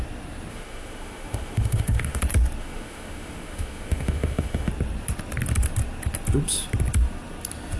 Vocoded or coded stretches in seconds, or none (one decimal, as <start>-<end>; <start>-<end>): 0.5-2.2; 2.6-4.7